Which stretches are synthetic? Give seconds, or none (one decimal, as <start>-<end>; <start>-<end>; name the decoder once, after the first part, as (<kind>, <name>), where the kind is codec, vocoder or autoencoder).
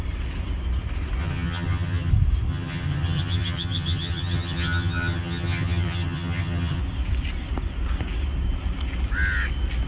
1.2-2.1 (vocoder, HiFi-GAN); 2.5-6.8